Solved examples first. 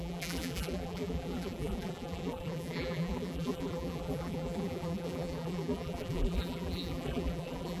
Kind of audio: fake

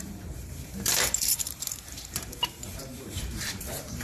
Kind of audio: fake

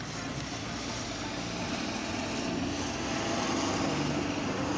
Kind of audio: real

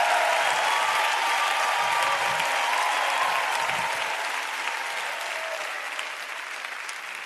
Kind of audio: real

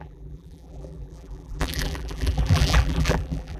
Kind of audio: fake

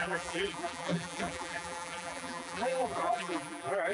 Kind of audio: fake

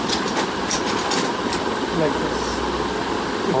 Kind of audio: real